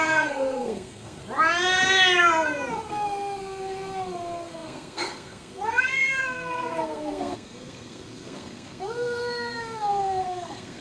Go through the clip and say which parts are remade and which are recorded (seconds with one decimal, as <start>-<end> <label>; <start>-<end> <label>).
0.0-1.2 remade; 1.2-2.7 recorded; 2.7-10.8 remade